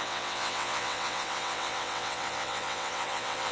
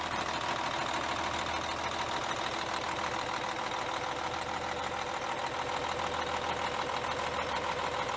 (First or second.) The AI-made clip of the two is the first